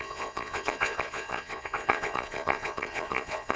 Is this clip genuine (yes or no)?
no